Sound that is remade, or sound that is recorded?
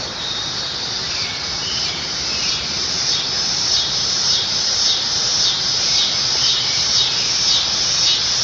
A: remade